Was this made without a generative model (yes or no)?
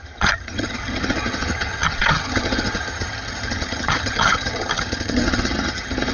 no